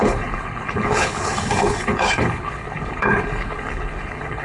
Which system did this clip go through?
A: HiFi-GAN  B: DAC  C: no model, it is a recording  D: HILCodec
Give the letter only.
D